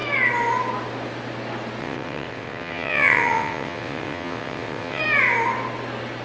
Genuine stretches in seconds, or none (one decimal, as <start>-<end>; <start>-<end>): 0.0-1.8; 5.0-6.2